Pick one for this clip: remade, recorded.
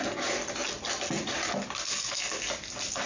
recorded